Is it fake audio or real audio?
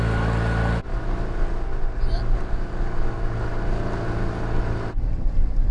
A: real